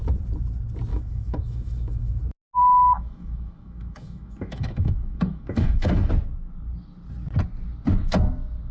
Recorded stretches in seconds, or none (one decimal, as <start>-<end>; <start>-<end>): 0.0-0.9; 2.2-2.6; 6.1-8.7

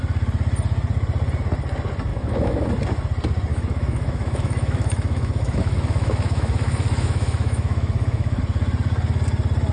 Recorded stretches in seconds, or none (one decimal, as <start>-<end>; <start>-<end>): 0.0-2.1; 2.7-3.5; 8.4-9.7

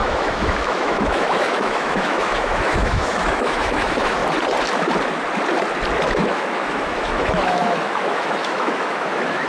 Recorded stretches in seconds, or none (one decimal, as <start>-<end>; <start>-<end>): 4.2-6.2

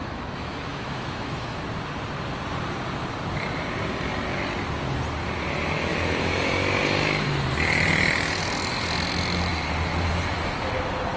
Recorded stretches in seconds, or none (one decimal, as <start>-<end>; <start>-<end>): 1.6-5.9; 6.5-11.2